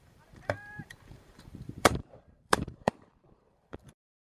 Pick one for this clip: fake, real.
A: fake